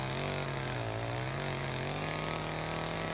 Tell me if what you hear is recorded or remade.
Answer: recorded